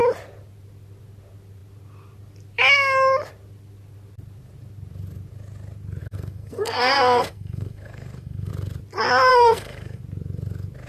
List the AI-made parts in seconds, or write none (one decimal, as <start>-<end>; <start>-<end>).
6.0-8.5; 9.3-10.0